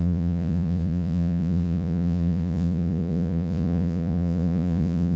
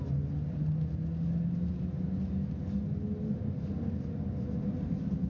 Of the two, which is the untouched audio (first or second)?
second